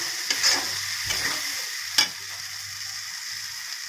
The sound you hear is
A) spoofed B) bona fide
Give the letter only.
B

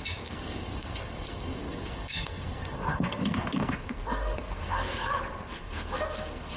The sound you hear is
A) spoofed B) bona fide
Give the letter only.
A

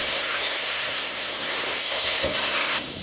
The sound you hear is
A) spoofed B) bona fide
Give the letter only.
A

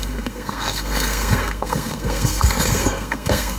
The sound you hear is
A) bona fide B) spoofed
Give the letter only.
B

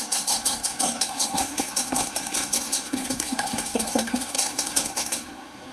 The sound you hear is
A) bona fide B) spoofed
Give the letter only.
B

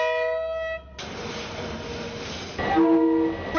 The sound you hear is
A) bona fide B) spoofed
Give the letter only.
A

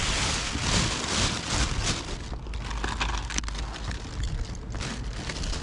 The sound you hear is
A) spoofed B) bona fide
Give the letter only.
B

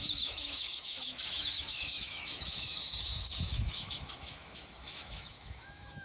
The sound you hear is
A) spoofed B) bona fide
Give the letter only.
A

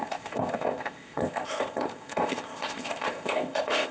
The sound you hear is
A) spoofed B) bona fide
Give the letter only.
A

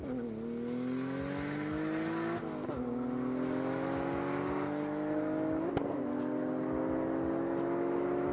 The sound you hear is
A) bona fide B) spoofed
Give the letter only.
A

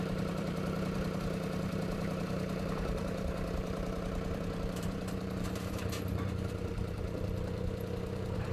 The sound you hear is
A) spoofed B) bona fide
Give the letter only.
A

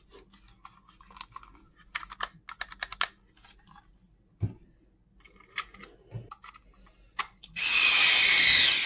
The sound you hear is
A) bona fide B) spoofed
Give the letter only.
A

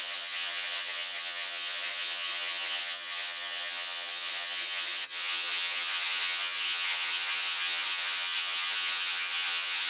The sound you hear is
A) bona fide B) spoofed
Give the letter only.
B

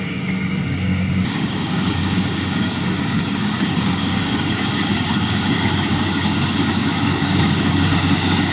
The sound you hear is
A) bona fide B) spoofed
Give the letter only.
B